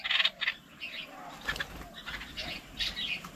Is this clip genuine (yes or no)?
yes